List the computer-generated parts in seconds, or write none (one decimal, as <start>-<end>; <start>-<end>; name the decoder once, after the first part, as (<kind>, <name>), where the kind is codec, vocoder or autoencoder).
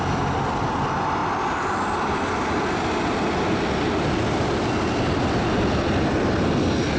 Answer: none